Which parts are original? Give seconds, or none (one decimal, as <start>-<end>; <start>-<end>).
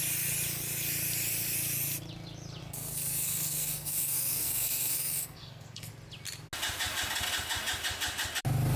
0.0-2.6; 5.9-8.8